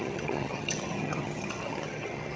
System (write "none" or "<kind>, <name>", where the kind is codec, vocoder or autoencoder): vocoder, HiFi-GAN